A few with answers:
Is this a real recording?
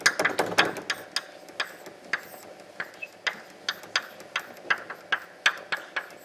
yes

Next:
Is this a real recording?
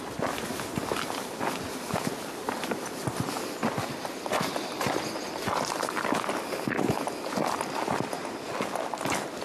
yes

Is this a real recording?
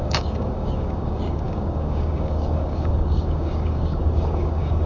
no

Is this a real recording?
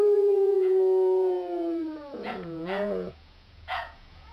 no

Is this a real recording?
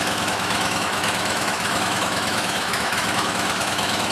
no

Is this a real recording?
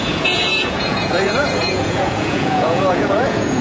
no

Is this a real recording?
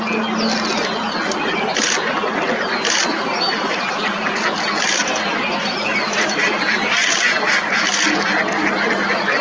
yes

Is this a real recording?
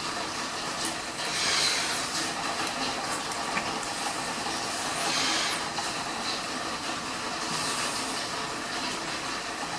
yes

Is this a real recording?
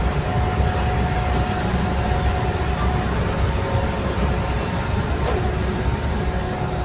yes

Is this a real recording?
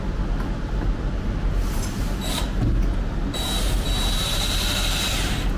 yes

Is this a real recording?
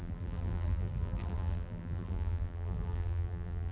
no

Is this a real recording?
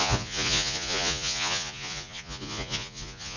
no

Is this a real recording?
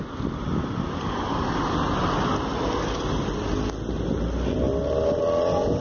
yes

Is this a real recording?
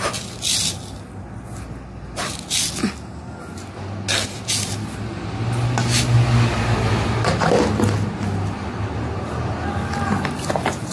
yes